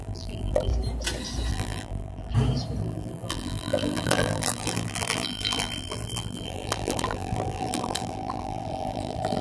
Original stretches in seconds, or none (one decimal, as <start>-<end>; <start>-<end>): 0.7-1.5; 2.3-2.8